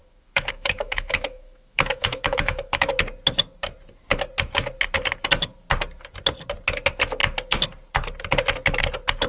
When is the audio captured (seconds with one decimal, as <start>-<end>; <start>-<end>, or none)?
2.9-9.3